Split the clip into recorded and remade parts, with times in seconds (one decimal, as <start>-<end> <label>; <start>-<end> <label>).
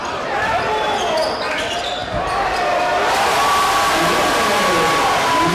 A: 0.0-5.5 recorded